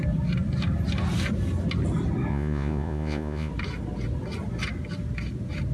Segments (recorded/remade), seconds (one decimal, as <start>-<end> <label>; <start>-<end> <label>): 0.0-2.3 recorded; 2.3-3.5 remade; 3.5-5.7 recorded